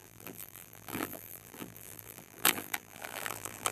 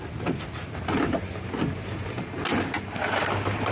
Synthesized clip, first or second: first